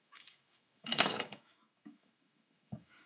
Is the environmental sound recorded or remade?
remade